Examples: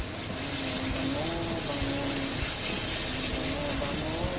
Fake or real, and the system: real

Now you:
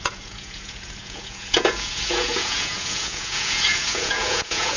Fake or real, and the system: fake, vocoder, Vocos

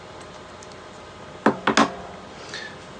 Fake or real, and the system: real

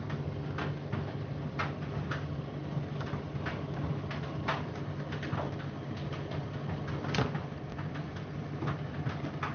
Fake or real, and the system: real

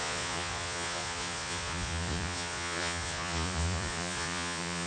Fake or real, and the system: fake, vocoder, Vocos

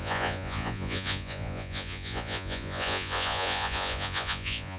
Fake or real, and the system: fake, vocoder, Vocos